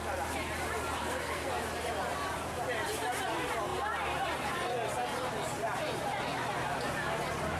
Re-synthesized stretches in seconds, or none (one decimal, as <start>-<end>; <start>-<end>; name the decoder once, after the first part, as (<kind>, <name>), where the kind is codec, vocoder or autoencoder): 1.0-1.5 (codec, SNAC)